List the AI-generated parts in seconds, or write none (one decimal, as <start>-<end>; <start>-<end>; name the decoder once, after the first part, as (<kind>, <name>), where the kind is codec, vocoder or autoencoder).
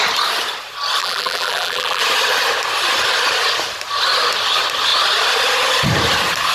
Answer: 1.0-2.0 (vocoder, BigVGAN v2)